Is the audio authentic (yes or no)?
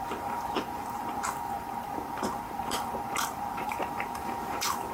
no